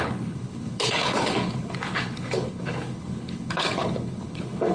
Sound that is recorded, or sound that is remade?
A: remade